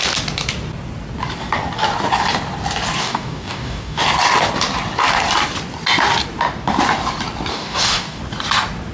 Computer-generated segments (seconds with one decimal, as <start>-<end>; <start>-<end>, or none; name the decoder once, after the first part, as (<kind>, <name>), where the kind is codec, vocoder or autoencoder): 3.0-4.0 (codec, DAC); 7.5-8.2